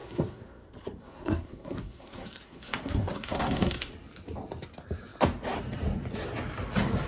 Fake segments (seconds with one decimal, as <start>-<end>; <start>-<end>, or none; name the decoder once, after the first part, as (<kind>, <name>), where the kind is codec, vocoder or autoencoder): 0.0-3.9 (codec, SNAC)